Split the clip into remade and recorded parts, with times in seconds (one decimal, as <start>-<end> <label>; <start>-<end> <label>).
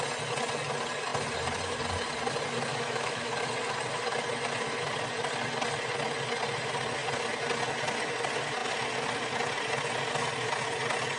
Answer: 0.0-2.7 recorded; 2.7-3.3 remade; 3.3-11.2 recorded